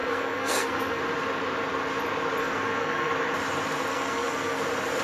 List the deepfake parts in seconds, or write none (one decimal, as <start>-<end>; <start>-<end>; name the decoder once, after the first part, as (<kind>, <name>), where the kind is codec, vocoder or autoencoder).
0.0-1.0 (codec, SNAC); 2.4-3.1; 3.9-4.6